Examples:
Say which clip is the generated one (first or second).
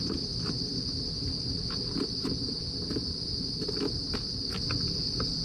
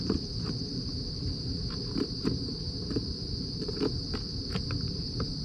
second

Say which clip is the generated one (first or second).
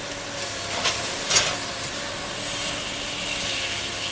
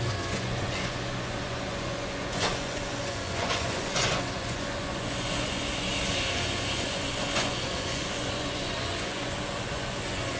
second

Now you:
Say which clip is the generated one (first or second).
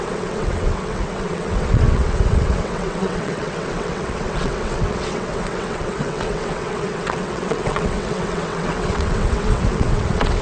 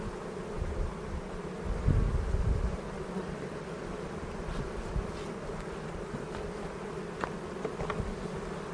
first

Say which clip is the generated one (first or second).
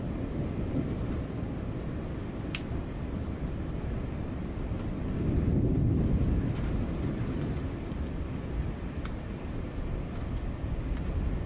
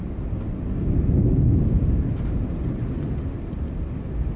first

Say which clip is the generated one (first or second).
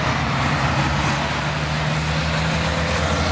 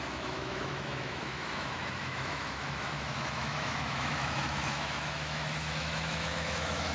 second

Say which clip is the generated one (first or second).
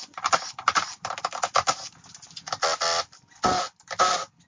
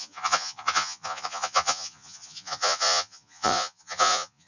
second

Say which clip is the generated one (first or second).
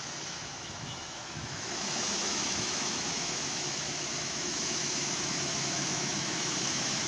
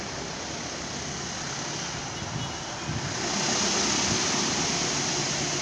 first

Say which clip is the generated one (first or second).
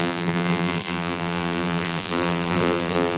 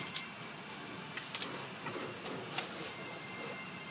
first